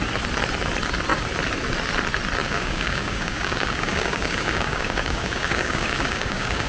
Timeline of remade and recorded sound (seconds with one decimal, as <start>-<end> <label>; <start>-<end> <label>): 0.0-2.4 recorded; 2.4-6.7 remade